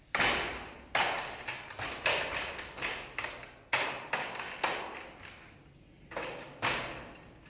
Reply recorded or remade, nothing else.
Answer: recorded